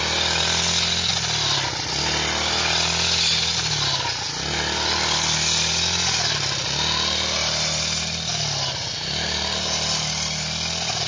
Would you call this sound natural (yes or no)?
yes